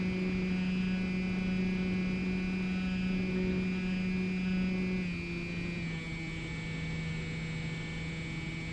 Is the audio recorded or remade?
recorded